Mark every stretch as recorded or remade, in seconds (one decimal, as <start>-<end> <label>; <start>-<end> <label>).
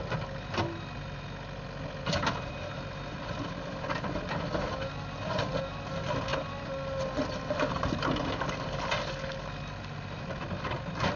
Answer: 0.0-11.2 recorded